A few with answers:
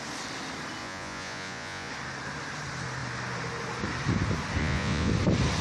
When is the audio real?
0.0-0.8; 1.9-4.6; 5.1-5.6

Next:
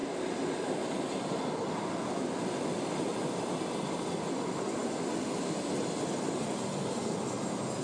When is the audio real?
0.0-7.8

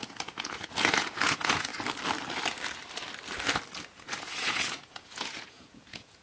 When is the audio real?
1.7-3.9

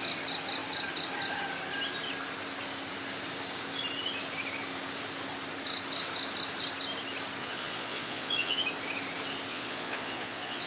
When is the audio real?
0.0-7.4; 8.6-9.5

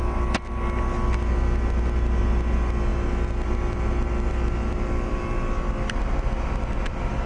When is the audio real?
0.0-7.3

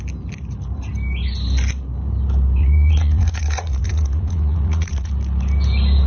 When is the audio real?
0.0-2.6; 5.1-6.1

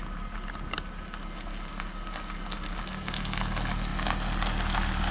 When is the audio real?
0.0-5.1

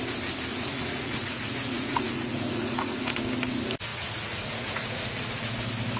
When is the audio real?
0.0-0.5; 3.2-3.9; 5.4-6.0